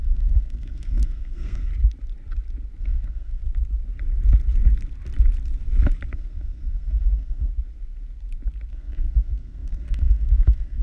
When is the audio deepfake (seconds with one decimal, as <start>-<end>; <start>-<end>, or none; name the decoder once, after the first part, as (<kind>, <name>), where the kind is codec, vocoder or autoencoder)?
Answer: 0.0-1.7 (codec, SNAC); 2.8-3.4; 6.1-7.5; 8.7-10.8